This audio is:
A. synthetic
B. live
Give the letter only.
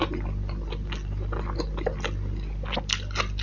B